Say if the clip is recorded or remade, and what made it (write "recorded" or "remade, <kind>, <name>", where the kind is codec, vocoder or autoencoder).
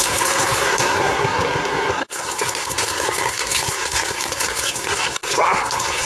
remade, codec, SNAC